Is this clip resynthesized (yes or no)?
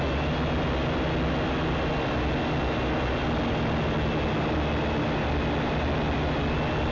no